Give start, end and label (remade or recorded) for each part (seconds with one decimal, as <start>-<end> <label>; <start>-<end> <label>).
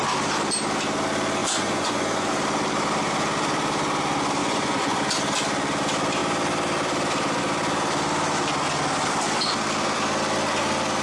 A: 0.0-1.4 recorded; 1.4-2.3 remade; 2.3-4.4 recorded; 4.4-5.0 remade; 5.0-11.0 recorded